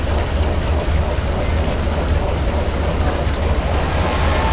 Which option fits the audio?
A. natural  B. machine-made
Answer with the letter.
A